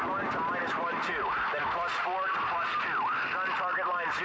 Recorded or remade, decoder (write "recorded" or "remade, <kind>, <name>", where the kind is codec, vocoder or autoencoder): recorded